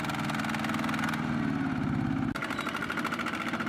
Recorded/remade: recorded